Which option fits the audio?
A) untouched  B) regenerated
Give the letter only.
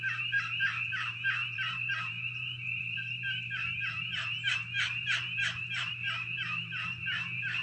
B